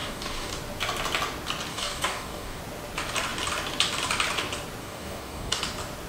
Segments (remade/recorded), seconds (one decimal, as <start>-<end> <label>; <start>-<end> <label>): 0.0-0.5 remade; 0.5-1.7 recorded; 1.7-2.6 remade; 2.6-4.8 recorded; 4.8-5.6 remade; 5.6-6.1 recorded